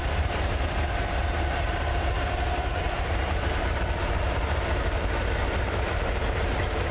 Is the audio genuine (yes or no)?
no